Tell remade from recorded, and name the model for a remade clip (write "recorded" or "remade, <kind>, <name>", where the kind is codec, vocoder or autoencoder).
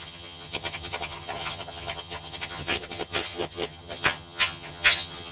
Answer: remade, vocoder, HiFi-GAN